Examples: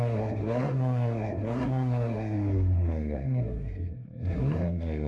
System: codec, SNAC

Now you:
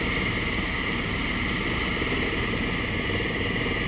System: none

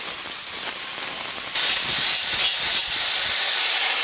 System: vocoder, BigVGAN v2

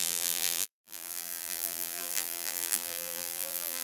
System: vocoder, BigVGAN v2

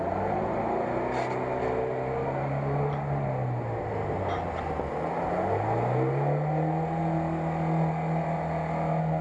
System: none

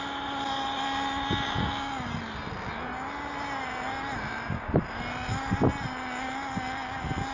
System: none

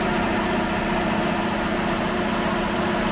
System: none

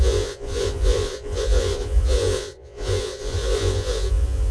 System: vocoder, Vocos